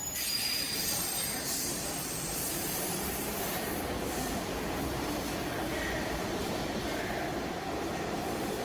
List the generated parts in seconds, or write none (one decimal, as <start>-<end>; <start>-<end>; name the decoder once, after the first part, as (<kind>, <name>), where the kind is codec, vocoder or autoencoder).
0.6-4.1 (vocoder, BigVGAN v2); 4.9-5.5; 6.4-7.0